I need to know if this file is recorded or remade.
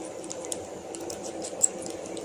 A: recorded